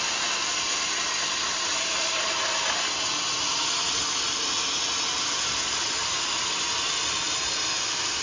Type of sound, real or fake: real